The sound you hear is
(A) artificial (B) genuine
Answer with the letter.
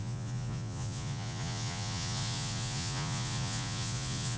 A